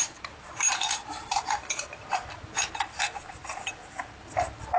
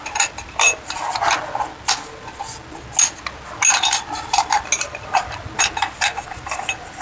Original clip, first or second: second